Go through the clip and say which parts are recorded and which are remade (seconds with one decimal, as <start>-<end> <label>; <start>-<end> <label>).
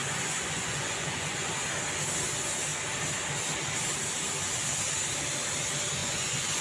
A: 0.0-1.5 remade; 1.5-6.0 recorded; 6.0-6.6 remade